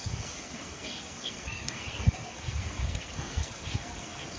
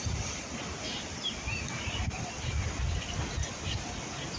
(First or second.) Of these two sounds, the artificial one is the first